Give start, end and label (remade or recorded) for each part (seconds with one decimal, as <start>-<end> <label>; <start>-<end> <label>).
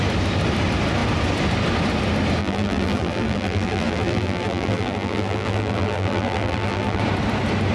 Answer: 0.0-2.4 recorded; 2.4-7.0 remade; 7.0-7.7 recorded